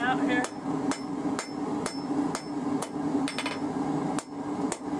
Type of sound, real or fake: real